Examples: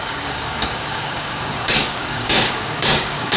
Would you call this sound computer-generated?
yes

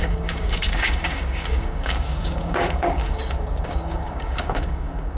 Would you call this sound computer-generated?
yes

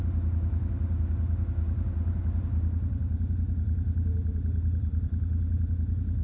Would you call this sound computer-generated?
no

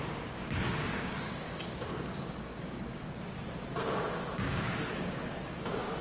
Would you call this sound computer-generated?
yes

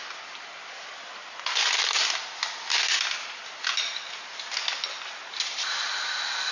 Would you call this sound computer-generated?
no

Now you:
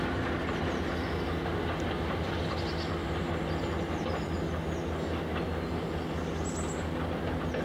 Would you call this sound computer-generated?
no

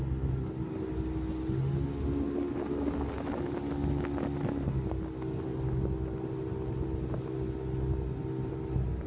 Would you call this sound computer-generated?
no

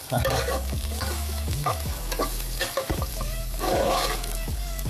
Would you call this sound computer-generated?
yes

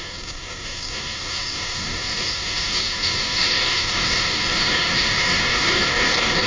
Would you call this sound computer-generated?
yes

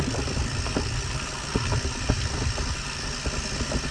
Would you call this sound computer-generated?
no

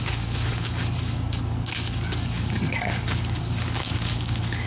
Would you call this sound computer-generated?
yes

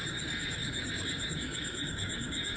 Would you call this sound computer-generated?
yes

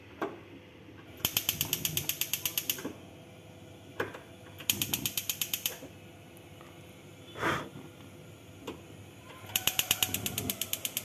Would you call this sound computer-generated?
no